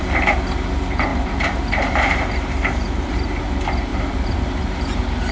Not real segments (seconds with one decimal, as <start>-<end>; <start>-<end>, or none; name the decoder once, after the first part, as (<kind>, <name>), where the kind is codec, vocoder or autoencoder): 1.1-3.4 (vocoder, BigVGAN v2); 3.9-5.3